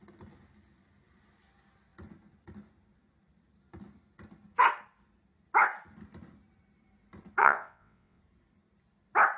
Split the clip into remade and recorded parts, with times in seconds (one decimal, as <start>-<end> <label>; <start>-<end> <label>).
0.0-7.4 recorded; 7.4-8.2 remade; 8.2-9.4 recorded